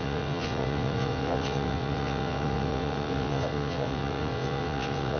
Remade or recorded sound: remade